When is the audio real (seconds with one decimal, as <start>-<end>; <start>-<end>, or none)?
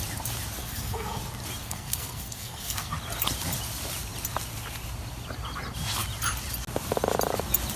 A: 0.0-0.6; 1.2-1.6; 2.9-7.8